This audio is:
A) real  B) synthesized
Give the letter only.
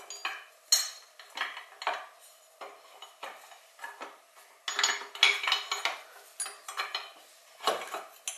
A